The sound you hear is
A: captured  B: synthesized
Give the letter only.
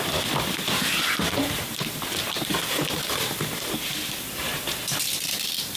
B